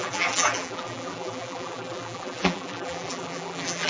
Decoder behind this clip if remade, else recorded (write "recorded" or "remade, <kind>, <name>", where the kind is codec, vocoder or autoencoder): remade, vocoder, BigVGAN v2